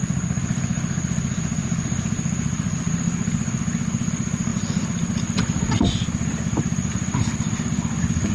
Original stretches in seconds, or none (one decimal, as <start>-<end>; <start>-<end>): 0.0-8.3